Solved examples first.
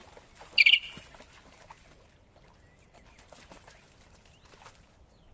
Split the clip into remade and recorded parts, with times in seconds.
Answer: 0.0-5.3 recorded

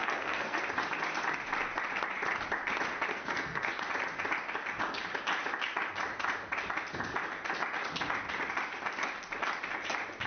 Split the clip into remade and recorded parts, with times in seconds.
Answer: 0.0-0.6 remade; 0.6-3.1 recorded; 3.1-3.7 remade; 3.7-10.3 recorded

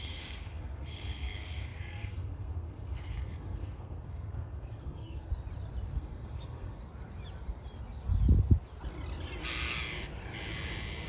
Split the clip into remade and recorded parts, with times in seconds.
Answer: 0.0-5.3 remade; 5.3-5.9 recorded; 5.9-6.8 remade; 6.8-11.1 recorded

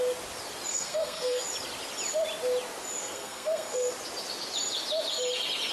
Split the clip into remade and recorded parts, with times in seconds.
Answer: 0.0-0.7 recorded; 0.7-1.4 remade; 1.4-3.0 recorded; 3.0-3.9 remade; 3.9-5.7 recorded

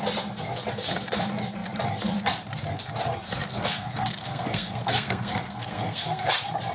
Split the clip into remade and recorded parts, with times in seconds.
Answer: 0.0-3.5 recorded; 3.5-6.3 remade; 6.3-6.7 recorded

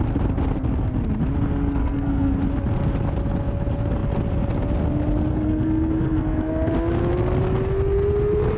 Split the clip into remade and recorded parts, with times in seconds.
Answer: 0.0-1.8 recorded; 1.8-2.4 remade; 2.4-5.3 recorded; 5.3-6.5 remade; 6.5-8.6 recorded

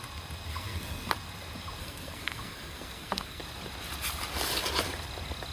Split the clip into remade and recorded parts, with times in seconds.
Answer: 0.0-0.5 recorded; 0.5-1.1 remade; 1.1-1.8 recorded; 1.8-3.4 remade; 3.4-5.5 recorded

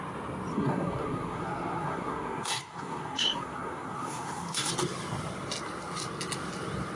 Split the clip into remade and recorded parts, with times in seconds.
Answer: 0.0-0.5 recorded; 0.5-4.7 remade; 4.7-7.0 recorded